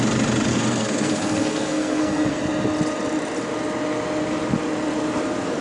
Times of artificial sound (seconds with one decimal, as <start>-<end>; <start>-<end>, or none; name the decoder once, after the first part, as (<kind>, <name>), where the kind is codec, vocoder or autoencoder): 0.5-2.4 (codec, SNAC)